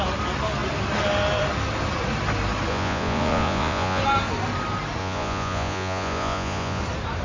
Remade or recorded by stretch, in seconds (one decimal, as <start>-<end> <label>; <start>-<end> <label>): 0.0-2.7 recorded; 2.7-4.0 remade; 4.0-5.0 recorded; 5.0-6.8 remade; 6.8-7.2 recorded